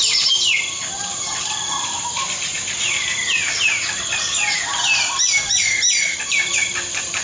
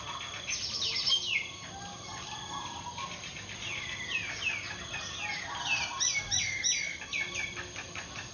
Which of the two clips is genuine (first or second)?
second